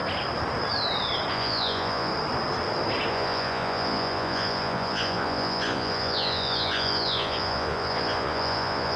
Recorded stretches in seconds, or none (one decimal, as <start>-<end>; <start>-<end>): 0.0-1.3; 2.1-3.1